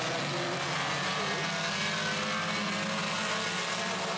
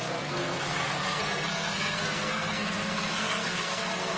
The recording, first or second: first